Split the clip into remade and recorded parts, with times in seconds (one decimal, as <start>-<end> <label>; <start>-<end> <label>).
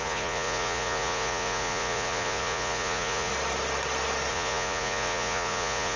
0.0-3.3 remade; 3.3-4.3 recorded; 4.3-6.0 remade